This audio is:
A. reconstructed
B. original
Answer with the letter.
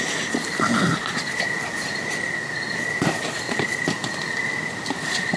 B